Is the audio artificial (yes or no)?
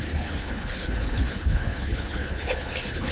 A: yes